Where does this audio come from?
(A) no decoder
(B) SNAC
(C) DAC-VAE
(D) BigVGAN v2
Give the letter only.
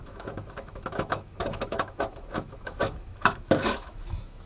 C